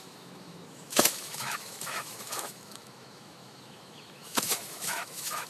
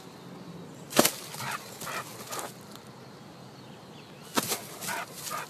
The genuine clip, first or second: second